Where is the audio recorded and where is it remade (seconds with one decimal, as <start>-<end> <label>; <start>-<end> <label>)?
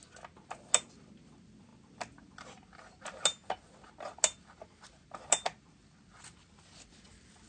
0.0-7.5 recorded